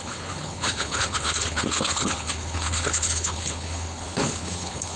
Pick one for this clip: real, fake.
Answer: fake